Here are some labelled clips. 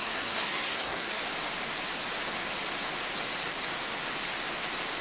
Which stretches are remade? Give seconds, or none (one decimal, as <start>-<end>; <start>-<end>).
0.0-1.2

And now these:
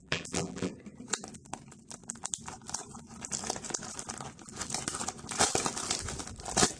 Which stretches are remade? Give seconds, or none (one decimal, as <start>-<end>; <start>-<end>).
0.0-0.7

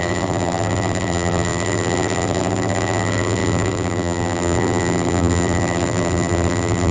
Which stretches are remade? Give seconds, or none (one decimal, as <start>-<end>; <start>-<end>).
0.0-6.9